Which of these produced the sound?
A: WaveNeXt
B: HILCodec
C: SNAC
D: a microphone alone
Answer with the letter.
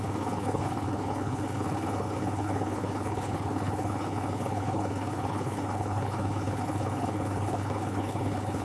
B